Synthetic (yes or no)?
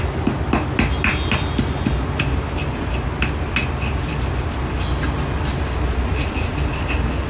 no